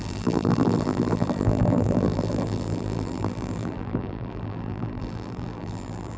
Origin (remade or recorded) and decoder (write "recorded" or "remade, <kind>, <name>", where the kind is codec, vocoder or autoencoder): remade, vocoder, BigVGAN v2